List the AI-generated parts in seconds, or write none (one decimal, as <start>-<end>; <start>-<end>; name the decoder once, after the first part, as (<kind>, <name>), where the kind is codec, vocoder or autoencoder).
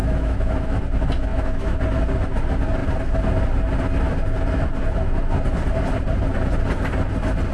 0.0-0.8 (autoencoder, DAC-VAE); 1.3-1.8